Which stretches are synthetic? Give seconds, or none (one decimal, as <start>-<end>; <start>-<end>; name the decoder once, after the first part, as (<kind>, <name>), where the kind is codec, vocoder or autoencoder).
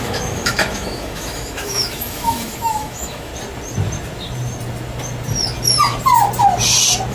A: 0.0-3.3 (autoencoder, DAC-VAE)